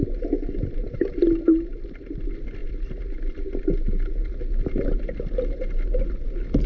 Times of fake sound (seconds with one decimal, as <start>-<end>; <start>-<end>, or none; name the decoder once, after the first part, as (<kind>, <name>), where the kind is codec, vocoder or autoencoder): 1.5-2.2 (vocoder, BigVGAN v2)